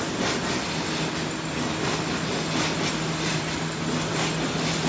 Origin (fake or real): real